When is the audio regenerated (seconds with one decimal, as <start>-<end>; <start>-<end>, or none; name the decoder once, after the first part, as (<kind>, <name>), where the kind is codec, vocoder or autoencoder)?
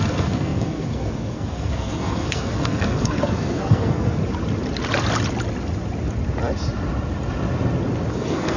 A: 0.0-4.2 (codec, SNAC); 8.1-8.6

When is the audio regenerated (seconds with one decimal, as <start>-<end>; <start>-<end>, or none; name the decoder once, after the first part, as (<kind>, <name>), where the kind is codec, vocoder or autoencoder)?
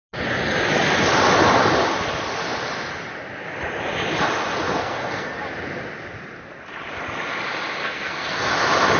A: 4.8-5.4 (codec, SNAC); 7.8-8.5